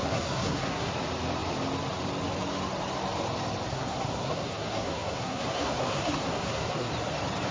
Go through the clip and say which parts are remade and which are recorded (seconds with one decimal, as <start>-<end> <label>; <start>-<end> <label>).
0.0-0.9 remade; 0.9-3.7 recorded; 3.7-6.9 remade; 6.9-7.5 recorded